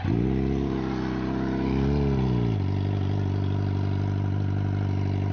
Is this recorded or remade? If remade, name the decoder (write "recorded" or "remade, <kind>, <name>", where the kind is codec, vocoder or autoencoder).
recorded